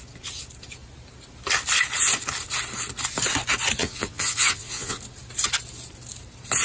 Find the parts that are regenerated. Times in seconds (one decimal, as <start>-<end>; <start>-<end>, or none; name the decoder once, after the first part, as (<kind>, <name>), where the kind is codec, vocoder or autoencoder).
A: 3.8-5.0 (vocoder, Vocos)